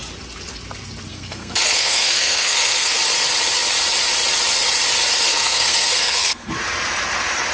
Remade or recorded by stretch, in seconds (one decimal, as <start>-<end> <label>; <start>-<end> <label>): 0.0-1.1 recorded; 1.1-3.0 remade; 3.0-5.3 recorded; 5.3-6.5 remade; 6.5-7.5 recorded